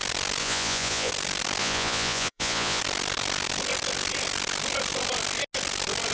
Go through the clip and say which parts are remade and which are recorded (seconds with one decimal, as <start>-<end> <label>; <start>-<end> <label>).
0.0-0.4 recorded; 0.4-1.1 remade; 1.1-1.6 recorded; 1.6-2.8 remade; 2.8-6.1 recorded